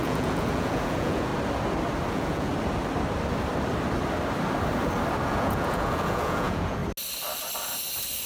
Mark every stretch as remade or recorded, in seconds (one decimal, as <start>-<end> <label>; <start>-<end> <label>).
0.0-1.3 remade; 1.3-2.1 recorded; 2.1-2.5 remade; 2.5-5.3 recorded; 5.3-6.8 remade; 6.8-8.3 recorded